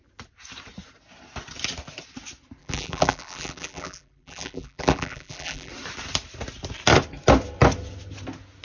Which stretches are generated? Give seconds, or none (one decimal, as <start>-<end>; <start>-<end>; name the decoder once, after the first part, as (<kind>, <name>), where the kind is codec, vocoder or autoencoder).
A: 2.6-5.7 (vocoder, BigVGAN v2)

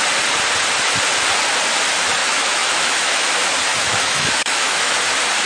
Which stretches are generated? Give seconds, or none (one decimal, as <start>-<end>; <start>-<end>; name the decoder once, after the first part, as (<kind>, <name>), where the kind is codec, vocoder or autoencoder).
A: 2.2-3.3 (autoencoder, DAC-VAE); 3.7-5.0

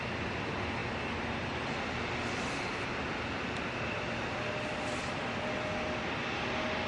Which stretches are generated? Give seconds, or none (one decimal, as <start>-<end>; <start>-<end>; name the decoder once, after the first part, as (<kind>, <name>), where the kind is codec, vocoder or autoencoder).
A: none

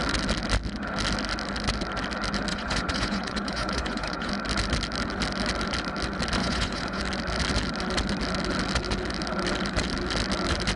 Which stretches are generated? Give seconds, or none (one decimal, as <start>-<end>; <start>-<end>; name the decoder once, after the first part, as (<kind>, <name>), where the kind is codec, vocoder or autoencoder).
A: 2.5-4.3 (vocoder, Vocos); 6.4-7.0

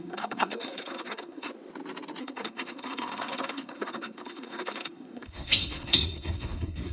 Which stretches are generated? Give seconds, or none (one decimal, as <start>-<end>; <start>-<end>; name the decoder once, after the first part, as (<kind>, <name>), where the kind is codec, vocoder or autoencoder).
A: 0.0-1.5 (codec, SNAC); 2.2-6.9